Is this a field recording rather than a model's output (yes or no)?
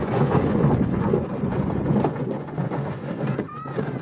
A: no